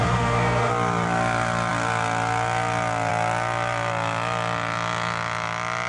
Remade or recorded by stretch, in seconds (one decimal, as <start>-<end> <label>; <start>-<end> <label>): 0.0-0.7 remade; 0.7-5.9 recorded